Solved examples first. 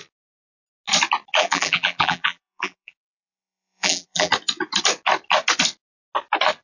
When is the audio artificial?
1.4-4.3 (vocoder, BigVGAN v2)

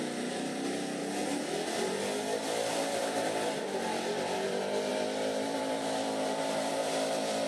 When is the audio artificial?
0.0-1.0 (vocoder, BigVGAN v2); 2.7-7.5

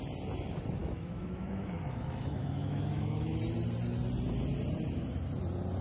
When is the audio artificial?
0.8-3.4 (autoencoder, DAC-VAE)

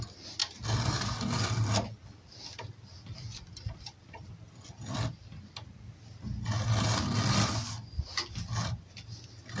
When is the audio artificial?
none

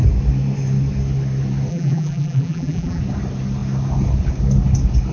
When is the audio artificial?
1.7-3.0 (vocoder, BigVGAN v2)

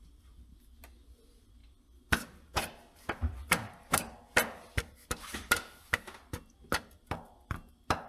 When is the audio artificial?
none